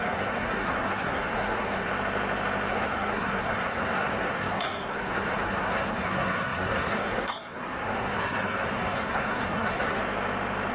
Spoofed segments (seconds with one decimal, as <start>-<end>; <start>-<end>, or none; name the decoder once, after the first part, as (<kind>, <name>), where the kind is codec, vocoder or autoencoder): 0.0-1.9 (codec, SNAC); 2.7-10.0